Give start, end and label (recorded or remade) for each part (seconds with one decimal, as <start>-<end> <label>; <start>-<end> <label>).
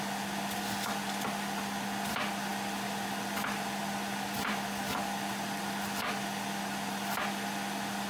0.0-8.1 recorded